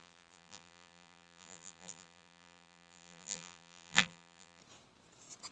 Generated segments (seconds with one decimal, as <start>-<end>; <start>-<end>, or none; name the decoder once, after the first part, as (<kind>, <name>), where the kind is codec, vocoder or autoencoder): 0.0-4.6 (vocoder, BigVGAN v2)